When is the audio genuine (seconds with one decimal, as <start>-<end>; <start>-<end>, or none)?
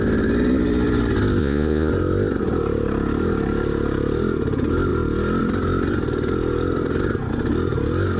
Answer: 0.0-1.4; 1.9-8.2